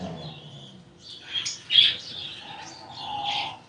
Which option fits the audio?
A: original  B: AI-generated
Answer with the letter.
A